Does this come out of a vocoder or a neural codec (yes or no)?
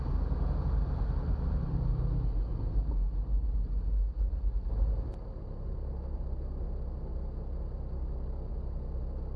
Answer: no